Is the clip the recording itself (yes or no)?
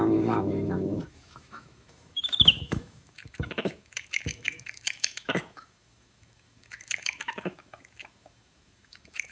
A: no